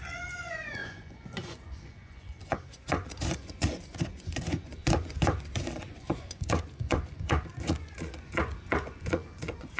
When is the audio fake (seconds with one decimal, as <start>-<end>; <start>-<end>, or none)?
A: 0.0-9.8